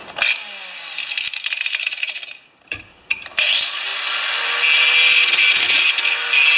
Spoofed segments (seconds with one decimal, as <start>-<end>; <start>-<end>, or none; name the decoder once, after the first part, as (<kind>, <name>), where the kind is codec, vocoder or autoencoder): 1.0-3.9 (vocoder, BigVGAN v2)